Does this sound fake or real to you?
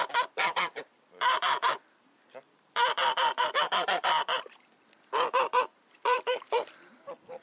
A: fake